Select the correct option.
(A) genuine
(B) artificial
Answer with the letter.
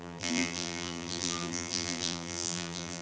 B